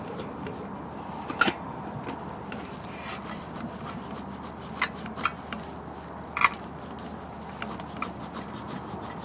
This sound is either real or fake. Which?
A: real